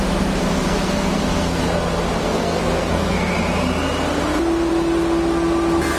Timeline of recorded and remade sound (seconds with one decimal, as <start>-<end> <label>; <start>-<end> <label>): 0.0-0.4 recorded; 0.4-1.6 remade; 1.6-2.2 recorded; 2.2-3.3 remade; 3.3-6.0 recorded